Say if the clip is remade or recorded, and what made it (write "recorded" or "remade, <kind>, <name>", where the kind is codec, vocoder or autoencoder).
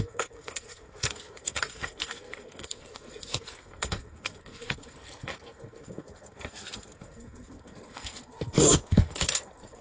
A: remade, codec, SNAC